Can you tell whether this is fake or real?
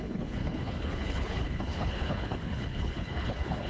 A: fake